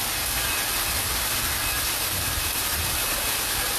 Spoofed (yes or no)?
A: no